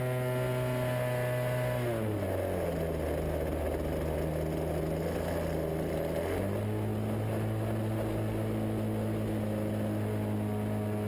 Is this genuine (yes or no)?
yes